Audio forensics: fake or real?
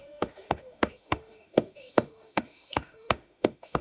fake